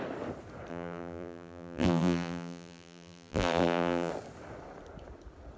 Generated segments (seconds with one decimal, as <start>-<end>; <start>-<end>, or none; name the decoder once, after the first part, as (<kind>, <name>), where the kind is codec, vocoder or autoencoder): 0.7-4.1 (vocoder, BigVGAN v2)